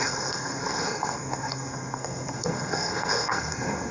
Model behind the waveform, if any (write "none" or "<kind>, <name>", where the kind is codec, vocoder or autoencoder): codec, SNAC